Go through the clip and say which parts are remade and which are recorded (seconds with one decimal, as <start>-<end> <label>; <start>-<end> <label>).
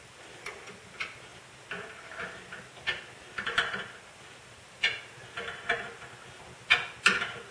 0.0-7.5 recorded